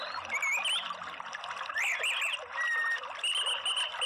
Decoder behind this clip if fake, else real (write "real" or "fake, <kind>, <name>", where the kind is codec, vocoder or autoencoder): real